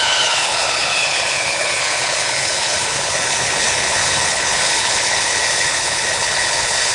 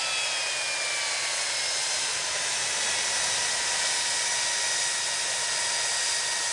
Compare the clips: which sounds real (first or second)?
second